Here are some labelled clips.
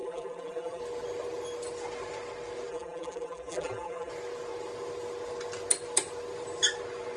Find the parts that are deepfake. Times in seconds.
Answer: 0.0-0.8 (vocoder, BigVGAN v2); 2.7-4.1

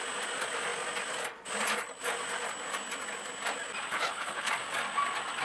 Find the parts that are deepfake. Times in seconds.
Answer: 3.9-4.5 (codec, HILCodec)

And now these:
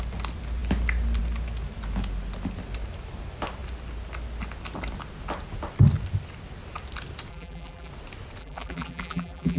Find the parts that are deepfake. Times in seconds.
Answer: 7.3-7.9 (vocoder, BigVGAN v2); 8.4-9.6

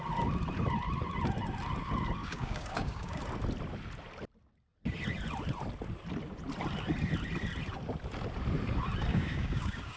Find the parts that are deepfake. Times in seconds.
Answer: 2.2-3.2 (codec, DAC); 9.1-10.0

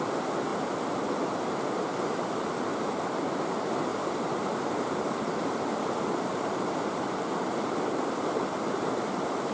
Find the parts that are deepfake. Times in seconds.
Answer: 3.9-7.0 (vocoder, BigVGAN v2)

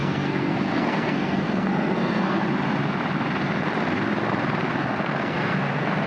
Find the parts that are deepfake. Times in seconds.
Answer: 0.0-2.4 (codec, SNAC); 4.7-6.1